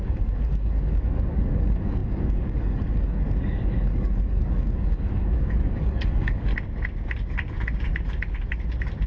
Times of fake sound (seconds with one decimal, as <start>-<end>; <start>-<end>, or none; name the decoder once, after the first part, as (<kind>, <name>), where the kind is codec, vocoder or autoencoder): 0.0-6.5 (codec, DAC)

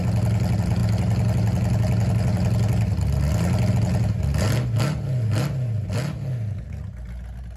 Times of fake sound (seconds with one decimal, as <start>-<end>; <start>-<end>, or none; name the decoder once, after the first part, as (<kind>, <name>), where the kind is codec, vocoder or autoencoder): none